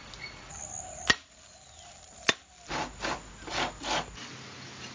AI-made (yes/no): no